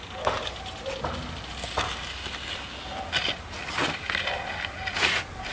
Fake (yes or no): no